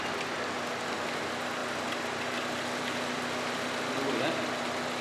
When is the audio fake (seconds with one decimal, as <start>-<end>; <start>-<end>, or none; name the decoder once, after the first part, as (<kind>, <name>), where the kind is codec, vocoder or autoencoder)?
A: none

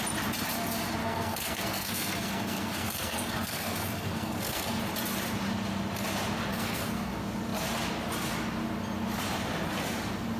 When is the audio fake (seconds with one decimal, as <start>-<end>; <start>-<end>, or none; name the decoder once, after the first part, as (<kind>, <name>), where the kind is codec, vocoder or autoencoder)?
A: 1.0-4.8 (codec, SNAC); 6.5-7.1